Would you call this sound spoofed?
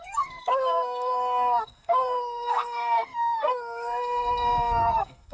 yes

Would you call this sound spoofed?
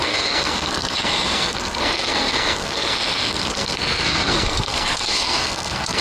yes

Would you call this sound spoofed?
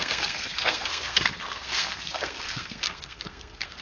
yes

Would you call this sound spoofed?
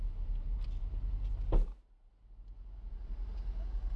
no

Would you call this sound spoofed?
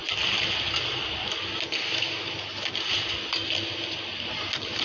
no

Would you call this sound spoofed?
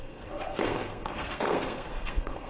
yes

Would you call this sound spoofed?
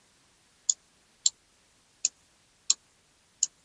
no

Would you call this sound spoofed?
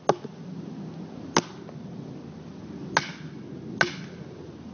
no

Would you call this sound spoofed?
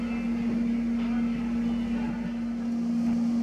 no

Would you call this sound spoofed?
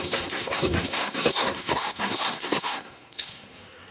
yes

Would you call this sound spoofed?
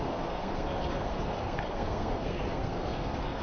yes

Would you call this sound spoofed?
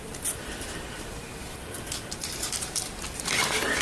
no